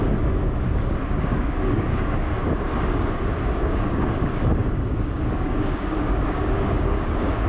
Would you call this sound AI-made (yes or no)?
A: yes